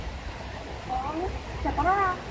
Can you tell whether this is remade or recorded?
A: recorded